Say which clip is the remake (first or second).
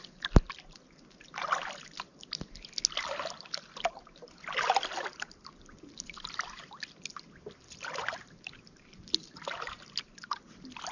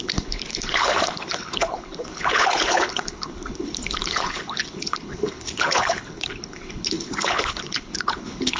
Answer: second